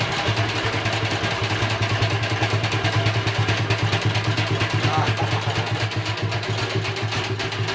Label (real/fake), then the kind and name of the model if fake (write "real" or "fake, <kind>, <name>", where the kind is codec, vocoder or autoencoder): real